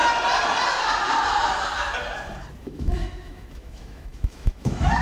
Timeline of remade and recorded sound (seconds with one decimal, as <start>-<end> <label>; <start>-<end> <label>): 0.0-2.6 recorded; 2.6-5.0 remade